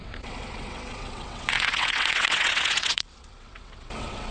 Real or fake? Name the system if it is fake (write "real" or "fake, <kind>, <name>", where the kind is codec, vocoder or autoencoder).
fake, vocoder, WaveNeXt